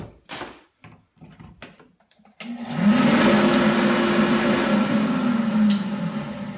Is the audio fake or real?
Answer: real